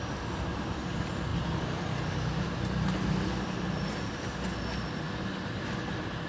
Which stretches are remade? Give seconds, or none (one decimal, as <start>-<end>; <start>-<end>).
none